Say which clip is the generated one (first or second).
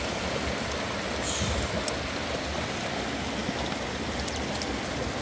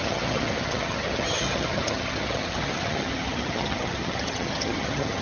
second